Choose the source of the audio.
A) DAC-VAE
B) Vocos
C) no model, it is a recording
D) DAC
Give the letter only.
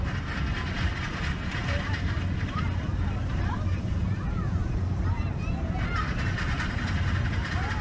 C